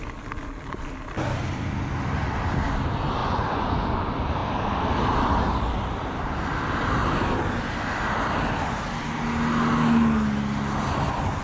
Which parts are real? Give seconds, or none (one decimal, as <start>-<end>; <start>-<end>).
0.0-3.2; 4.0-11.4